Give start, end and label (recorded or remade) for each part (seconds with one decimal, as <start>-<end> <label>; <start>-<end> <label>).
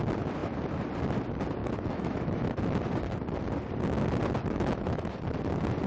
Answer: 0.0-1.6 recorded; 1.6-2.6 remade; 2.6-4.4 recorded; 4.4-5.1 remade; 5.1-5.9 recorded